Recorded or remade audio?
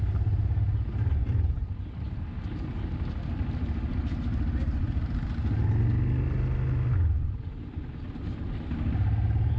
recorded